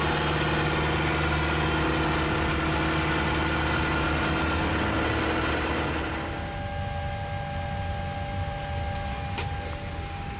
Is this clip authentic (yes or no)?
yes